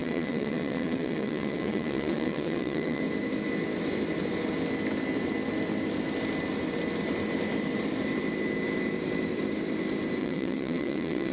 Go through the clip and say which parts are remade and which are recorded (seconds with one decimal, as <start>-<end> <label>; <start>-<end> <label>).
0.0-3.0 remade; 3.0-10.2 recorded; 10.2-11.3 remade